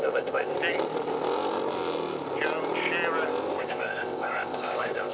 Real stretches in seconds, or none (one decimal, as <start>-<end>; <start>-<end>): 0.5-3.6